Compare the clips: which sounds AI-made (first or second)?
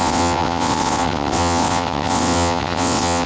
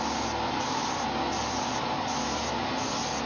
first